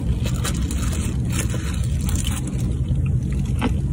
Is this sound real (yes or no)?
yes